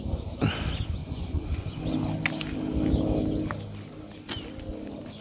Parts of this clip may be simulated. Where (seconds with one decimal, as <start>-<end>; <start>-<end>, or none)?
1.0-1.8